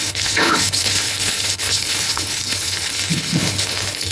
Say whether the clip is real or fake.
fake